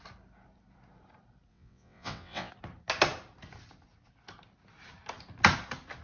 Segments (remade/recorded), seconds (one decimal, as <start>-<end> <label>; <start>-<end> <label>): 0.0-1.5 recorded; 1.5-2.5 remade; 2.5-6.0 recorded